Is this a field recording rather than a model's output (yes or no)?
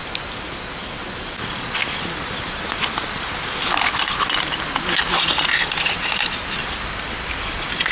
yes